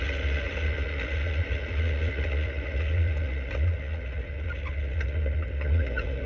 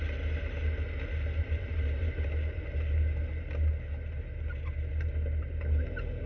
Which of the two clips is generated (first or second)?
first